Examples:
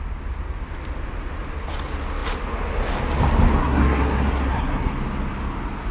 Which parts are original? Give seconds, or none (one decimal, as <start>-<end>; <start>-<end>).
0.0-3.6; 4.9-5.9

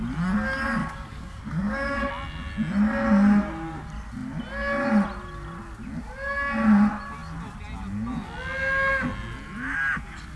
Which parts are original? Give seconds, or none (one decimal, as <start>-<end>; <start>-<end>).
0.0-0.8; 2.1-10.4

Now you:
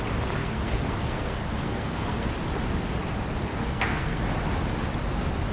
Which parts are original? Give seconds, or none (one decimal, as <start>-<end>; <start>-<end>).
0.0-0.4; 2.3-3.5; 4.2-5.5